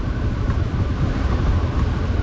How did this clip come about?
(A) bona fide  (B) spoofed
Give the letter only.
A